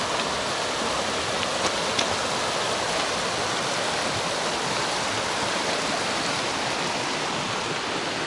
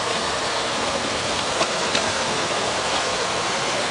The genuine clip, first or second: first